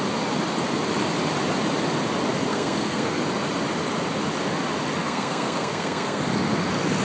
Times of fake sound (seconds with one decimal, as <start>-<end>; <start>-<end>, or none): 2.5-3.2; 5.0-6.2